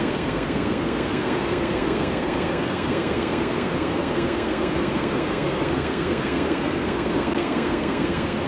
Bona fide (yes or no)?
no